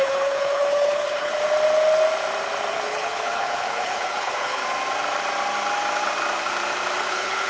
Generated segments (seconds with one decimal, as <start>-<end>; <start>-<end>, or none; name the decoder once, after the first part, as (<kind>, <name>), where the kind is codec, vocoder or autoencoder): 0.0-1.3 (codec, HILCodec); 2.7-4.6; 7.1-7.5